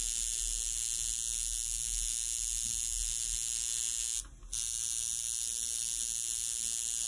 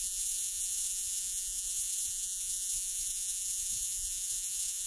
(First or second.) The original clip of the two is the first